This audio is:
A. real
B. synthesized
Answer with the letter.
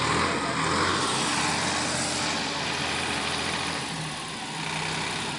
A